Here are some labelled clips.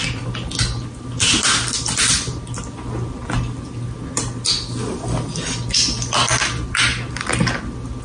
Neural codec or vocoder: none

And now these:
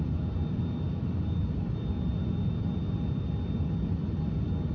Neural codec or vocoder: none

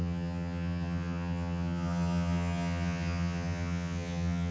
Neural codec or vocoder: vocoder, HiFi-GAN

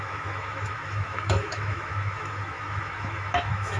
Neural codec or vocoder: autoencoder, DAC-VAE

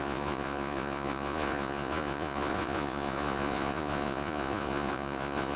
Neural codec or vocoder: vocoder, Vocos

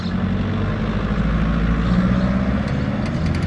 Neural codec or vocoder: none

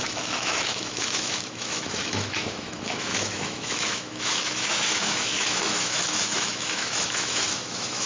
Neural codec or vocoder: autoencoder, DAC-VAE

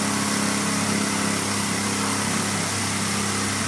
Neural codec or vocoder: none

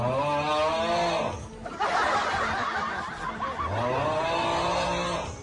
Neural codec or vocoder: none